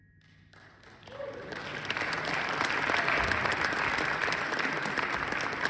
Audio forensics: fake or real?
real